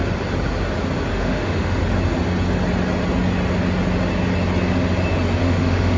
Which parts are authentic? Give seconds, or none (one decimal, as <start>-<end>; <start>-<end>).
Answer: 0.0-1.1; 1.8-5.4